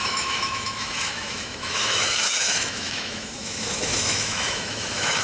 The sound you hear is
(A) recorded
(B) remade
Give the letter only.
B